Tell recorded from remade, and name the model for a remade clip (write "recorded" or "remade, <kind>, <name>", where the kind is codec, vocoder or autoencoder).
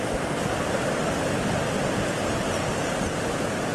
recorded